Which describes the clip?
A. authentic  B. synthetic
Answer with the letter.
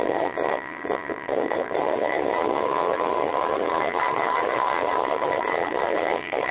B